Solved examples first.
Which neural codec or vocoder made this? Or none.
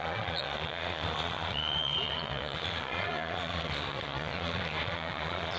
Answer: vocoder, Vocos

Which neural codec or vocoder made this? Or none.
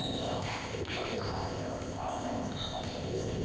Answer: codec, ZipCodec